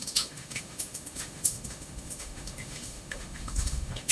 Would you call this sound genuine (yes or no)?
no